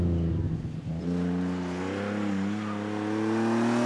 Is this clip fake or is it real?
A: real